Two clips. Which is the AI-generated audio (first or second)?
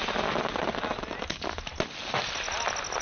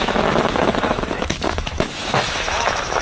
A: second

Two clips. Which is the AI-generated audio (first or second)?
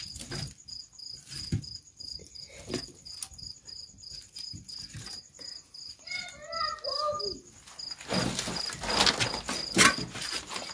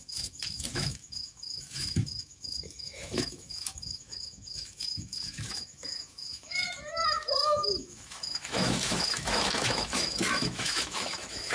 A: second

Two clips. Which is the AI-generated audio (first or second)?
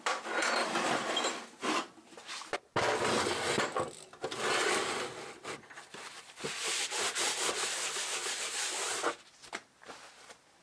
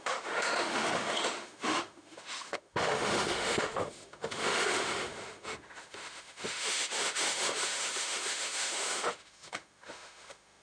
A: second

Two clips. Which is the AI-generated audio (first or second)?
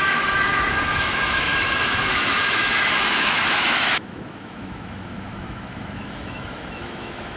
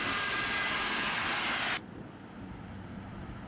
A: first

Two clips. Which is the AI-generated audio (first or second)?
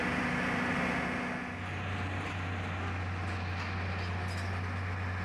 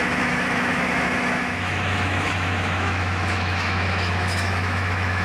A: second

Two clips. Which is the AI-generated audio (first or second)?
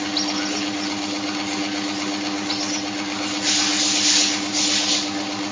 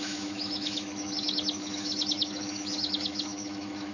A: second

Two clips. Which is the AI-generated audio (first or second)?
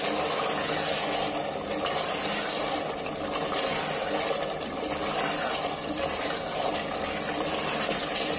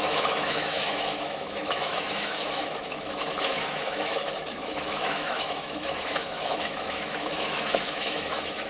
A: second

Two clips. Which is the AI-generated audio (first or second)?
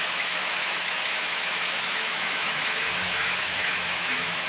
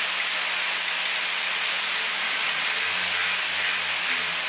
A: first